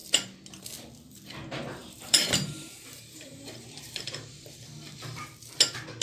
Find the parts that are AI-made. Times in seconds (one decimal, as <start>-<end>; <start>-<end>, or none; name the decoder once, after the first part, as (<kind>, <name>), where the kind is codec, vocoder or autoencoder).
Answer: 1.8-5.2 (vocoder, BigVGAN v2)